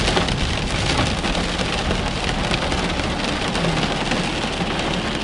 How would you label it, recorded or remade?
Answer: recorded